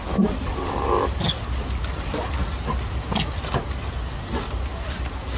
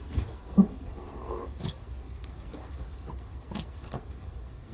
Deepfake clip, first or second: second